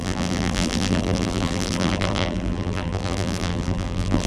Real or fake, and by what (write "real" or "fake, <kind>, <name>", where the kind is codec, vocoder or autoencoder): fake, vocoder, BigVGAN v2